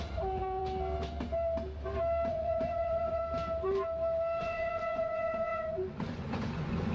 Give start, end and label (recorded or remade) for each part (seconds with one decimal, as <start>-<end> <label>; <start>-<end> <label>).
0.0-0.6 remade; 0.6-2.3 recorded; 2.3-3.2 remade; 3.2-4.4 recorded; 4.4-6.9 remade